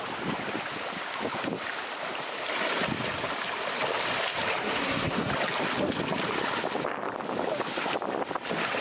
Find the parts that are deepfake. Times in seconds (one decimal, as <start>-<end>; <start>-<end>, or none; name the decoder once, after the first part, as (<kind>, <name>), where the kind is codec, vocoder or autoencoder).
4.6-5.3 (codec, SNAC)